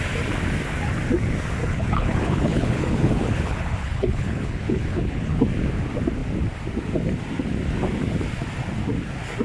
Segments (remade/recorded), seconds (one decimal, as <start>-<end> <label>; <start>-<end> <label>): 0.0-1.6 recorded; 1.6-5.4 remade; 5.4-9.4 recorded